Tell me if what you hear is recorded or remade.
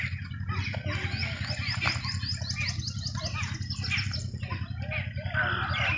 recorded